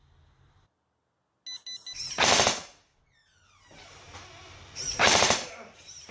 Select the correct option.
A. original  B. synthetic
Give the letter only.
A